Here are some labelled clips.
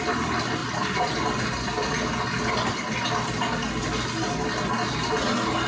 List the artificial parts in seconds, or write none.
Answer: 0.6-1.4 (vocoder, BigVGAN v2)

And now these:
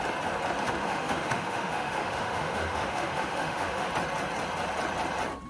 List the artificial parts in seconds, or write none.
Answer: 0.6-3.9 (autoencoder, DAC-VAE)